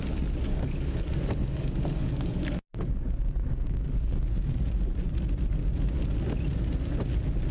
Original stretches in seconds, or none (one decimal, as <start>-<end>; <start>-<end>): 0.0-0.5; 4.3-7.5